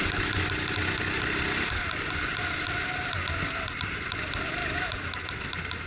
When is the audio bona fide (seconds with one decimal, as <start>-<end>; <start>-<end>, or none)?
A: 0.0-5.9